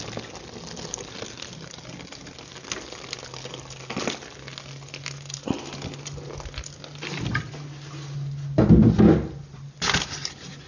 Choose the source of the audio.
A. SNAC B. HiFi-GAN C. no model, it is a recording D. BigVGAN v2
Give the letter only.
C